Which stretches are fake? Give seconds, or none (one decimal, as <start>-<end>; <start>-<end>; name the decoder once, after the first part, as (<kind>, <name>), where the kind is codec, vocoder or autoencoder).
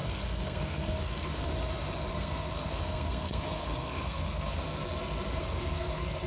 0.0-1.5 (codec, SNAC); 2.1-4.6; 5.4-6.3